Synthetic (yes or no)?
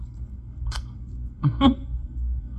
yes